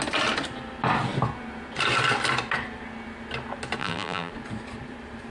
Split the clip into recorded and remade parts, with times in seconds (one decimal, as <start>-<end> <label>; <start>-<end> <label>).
0.0-3.8 recorded; 3.8-4.3 remade; 4.3-5.3 recorded